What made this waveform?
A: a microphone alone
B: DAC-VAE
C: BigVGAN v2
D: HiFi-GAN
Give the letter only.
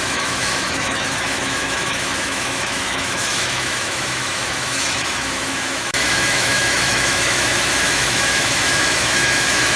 B